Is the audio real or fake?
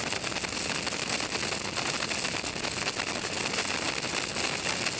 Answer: real